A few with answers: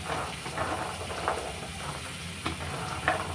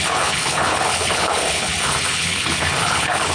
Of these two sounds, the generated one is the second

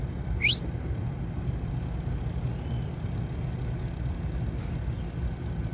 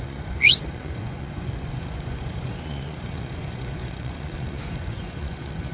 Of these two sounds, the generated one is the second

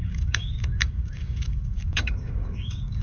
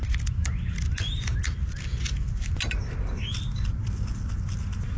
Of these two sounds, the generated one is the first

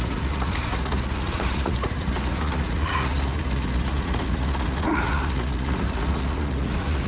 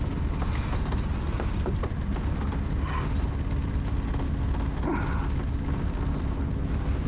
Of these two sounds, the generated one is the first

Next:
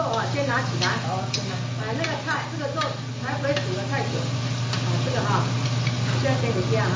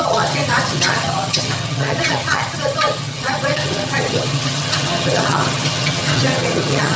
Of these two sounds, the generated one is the second